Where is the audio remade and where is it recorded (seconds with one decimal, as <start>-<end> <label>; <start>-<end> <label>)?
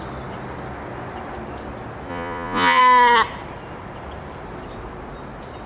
0.0-2.1 recorded; 2.1-2.8 remade; 2.8-5.7 recorded